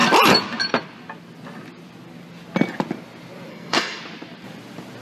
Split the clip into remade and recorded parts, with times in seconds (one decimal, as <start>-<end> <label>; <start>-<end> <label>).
0.0-3.5 recorded; 3.5-4.0 remade; 4.0-5.0 recorded